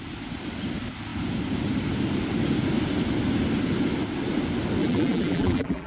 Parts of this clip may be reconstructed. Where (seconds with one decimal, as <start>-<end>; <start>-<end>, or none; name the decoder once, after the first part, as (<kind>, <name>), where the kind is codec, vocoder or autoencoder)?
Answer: 4.8-5.9 (vocoder, BigVGAN v2)